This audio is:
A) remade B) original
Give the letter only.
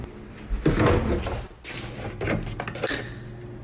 B